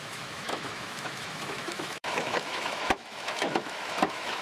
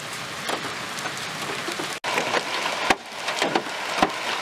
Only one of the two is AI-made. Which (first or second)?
first